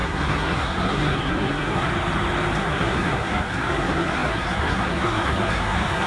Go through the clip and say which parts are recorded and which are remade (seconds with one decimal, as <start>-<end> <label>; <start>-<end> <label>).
0.0-1.9 remade; 1.9-2.6 recorded; 2.6-6.1 remade